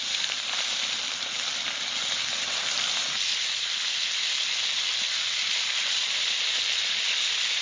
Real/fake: real